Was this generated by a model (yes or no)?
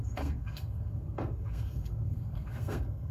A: yes